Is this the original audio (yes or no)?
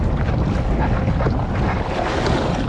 yes